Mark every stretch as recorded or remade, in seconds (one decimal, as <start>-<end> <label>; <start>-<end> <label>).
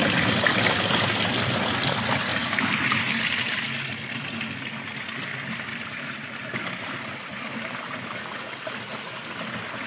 0.0-2.3 recorded; 2.3-3.2 remade; 3.2-5.7 recorded; 5.7-6.3 remade; 6.3-7.3 recorded; 7.3-8.1 remade; 8.1-9.9 recorded